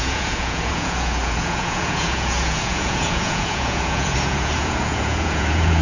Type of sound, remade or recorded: remade